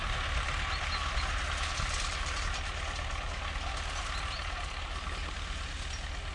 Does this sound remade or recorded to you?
recorded